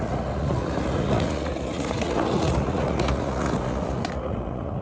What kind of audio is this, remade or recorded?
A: remade